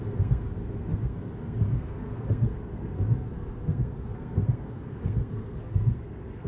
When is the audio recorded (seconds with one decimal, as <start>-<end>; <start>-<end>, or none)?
none